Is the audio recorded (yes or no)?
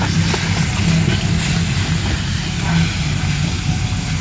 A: yes